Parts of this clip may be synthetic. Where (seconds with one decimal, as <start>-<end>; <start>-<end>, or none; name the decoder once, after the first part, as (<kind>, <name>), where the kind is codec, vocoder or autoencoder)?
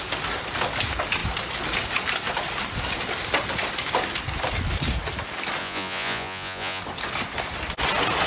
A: 5.6-6.8 (vocoder, Vocos)